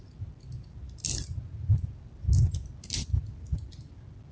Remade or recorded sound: recorded